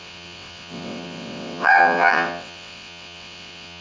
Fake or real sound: fake